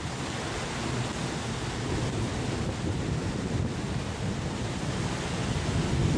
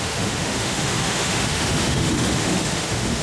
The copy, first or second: second